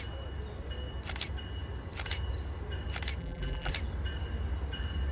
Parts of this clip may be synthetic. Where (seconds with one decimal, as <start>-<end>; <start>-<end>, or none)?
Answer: 3.2-3.7